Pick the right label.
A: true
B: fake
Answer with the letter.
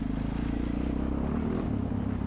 A